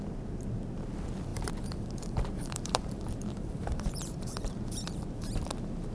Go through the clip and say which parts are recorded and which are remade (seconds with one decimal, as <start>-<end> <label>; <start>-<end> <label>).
0.0-1.3 recorded; 1.3-4.5 remade; 4.5-5.9 recorded